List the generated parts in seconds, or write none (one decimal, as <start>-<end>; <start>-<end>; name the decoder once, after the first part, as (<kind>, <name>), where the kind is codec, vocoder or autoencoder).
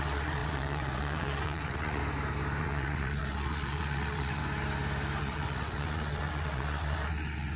0.0-2.0 (vocoder, WaveNeXt); 2.6-4.4; 5.2-7.6